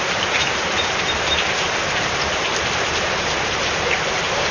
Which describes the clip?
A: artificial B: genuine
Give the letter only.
A